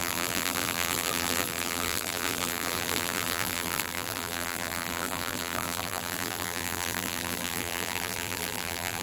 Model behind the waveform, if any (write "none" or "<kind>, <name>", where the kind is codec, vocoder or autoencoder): vocoder, BigVGAN v2